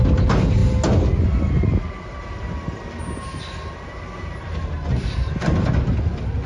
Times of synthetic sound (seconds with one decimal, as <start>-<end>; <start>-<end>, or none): none